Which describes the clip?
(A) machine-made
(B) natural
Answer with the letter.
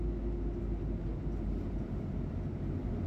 B